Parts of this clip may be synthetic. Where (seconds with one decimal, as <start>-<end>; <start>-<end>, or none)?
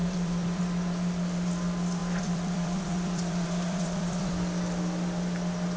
0.0-0.6; 2.0-4.3